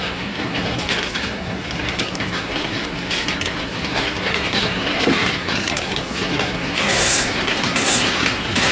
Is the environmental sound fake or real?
fake